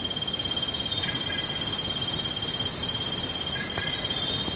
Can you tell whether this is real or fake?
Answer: real